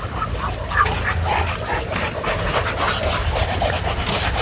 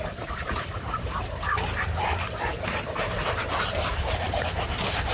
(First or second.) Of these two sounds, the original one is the first